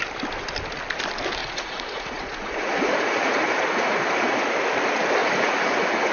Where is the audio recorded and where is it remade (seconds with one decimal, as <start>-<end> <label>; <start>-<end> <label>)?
0.0-1.4 recorded; 1.4-4.4 remade; 4.4-5.2 recorded; 5.2-6.1 remade